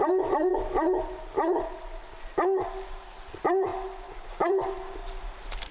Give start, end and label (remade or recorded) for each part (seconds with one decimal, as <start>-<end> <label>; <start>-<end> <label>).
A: 0.0-0.5 remade; 0.5-2.9 recorded; 2.9-3.7 remade; 3.7-4.3 recorded; 4.3-5.0 remade; 5.0-5.7 recorded